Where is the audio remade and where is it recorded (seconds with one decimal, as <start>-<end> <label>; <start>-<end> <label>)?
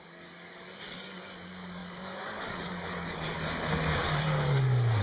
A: 0.0-5.0 remade